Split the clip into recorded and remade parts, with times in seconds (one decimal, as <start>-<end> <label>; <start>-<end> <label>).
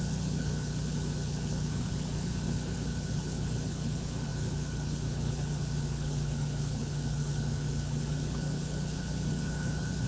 0.0-10.1 remade